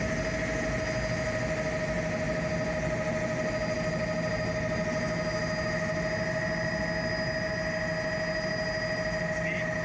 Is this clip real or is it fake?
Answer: real